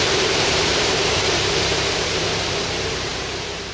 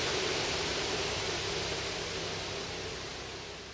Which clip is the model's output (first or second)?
first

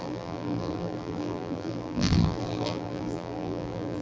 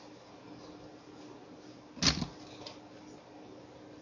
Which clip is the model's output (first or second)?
first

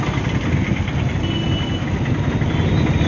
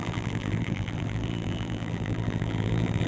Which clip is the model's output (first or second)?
second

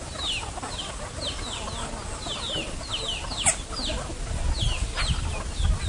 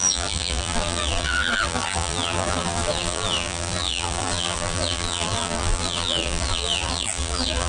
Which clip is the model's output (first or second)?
second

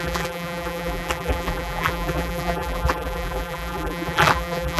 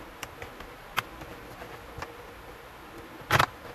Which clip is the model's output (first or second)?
first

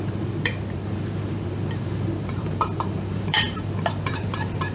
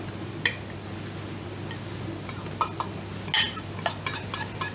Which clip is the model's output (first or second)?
first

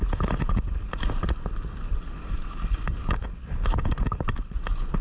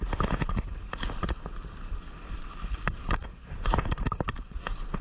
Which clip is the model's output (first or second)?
second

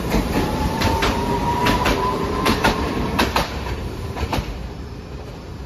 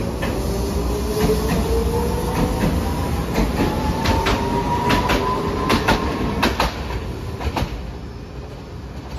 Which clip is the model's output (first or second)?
first